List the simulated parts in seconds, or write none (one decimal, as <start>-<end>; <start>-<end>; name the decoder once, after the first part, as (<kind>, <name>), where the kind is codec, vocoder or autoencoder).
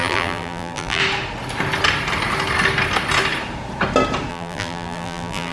0.0-1.0 (vocoder, BigVGAN v2); 4.3-5.5